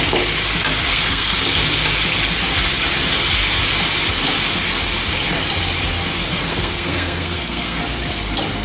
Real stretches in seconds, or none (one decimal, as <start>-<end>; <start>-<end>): 0.0-0.9; 1.4-6.3; 7.8-8.6